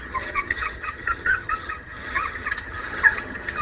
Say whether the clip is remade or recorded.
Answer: remade